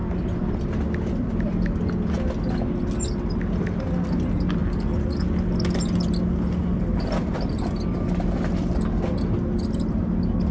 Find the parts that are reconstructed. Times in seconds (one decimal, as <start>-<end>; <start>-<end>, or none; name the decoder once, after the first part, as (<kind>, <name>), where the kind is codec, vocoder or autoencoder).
none